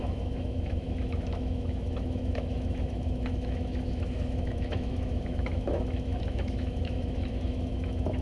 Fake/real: fake